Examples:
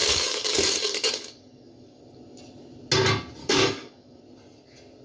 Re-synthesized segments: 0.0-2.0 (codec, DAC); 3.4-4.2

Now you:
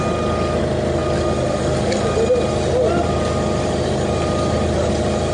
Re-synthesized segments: none

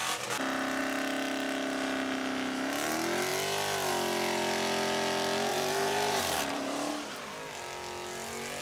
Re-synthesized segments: 5.5-6.9 (vocoder, BigVGAN v2)

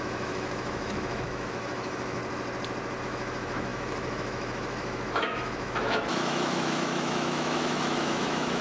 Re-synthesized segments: 0.0-2.2 (autoencoder, DAC-VAE); 3.0-8.6

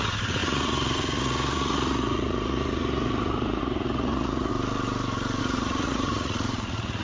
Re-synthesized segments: 0.0-4.5 (vocoder, Vocos); 5.4-7.0